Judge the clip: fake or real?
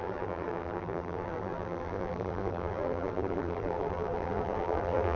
fake